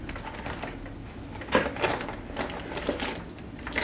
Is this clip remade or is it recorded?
recorded